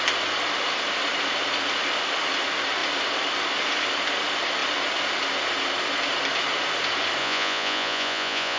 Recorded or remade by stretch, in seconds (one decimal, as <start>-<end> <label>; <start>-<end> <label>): 0.0-7.2 recorded; 7.2-8.6 remade